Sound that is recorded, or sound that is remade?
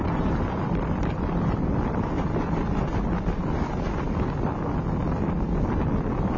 recorded